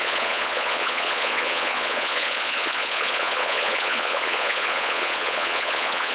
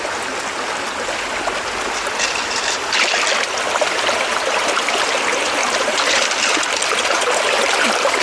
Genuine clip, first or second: second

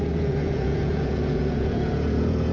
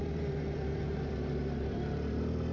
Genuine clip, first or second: second